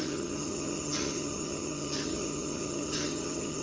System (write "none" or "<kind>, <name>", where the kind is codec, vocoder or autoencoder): vocoder, HiFi-GAN